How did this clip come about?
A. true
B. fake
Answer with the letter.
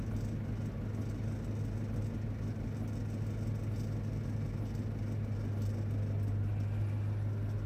A